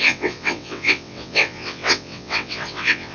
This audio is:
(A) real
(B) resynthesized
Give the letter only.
B